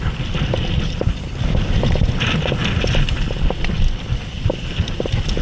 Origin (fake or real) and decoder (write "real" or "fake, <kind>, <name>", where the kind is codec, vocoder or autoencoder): real